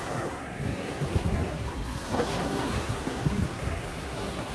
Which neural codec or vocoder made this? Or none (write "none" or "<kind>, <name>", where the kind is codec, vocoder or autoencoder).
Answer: codec, SNAC